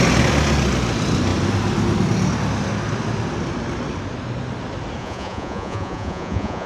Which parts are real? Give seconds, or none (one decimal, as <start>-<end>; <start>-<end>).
0.0-5.0